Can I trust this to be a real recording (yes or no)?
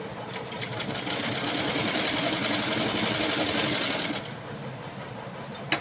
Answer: yes